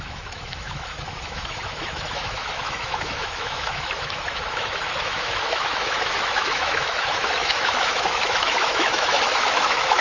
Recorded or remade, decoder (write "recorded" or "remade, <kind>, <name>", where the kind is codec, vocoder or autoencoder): remade, autoencoder, DAC-VAE